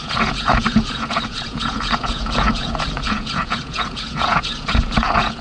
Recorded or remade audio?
remade